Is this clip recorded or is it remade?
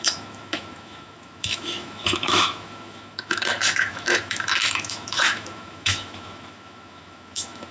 remade